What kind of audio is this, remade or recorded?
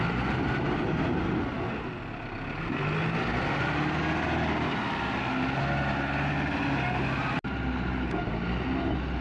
recorded